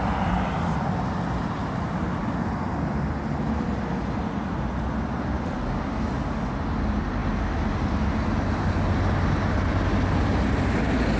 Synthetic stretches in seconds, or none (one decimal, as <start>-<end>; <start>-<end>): none